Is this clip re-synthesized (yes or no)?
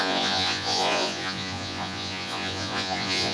yes